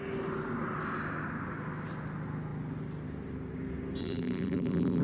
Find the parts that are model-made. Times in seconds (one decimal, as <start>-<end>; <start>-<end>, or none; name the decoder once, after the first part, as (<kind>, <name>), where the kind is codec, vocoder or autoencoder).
4.0-5.0 (vocoder, BigVGAN v2)